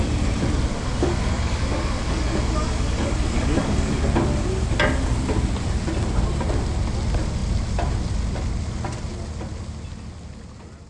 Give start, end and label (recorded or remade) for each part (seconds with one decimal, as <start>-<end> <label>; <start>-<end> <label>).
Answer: 0.0-0.7 recorded; 0.7-4.0 remade; 4.0-10.9 recorded